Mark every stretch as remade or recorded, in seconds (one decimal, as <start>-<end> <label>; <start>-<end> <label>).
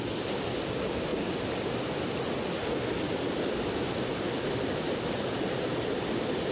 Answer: 0.0-6.5 recorded